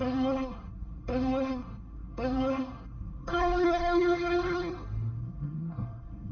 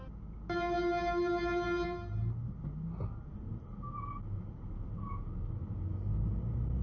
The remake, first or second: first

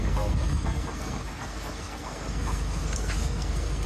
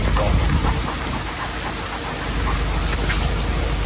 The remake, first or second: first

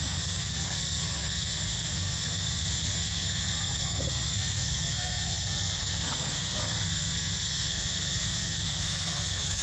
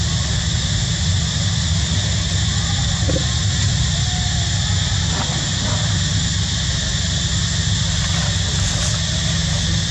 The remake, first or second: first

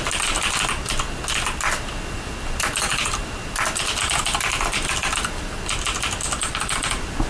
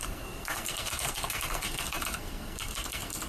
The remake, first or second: second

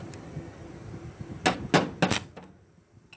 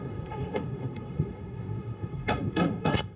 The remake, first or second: second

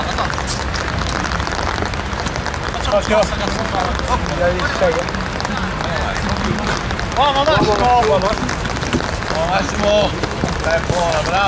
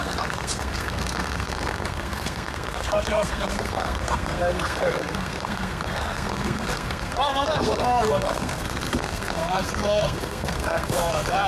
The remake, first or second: second